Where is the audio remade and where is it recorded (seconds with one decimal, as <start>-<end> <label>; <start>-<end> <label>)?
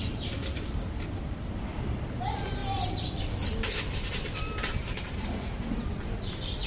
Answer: 0.0-6.7 recorded